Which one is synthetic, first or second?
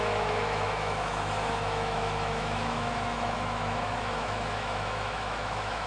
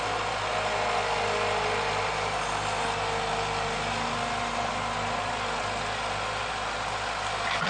first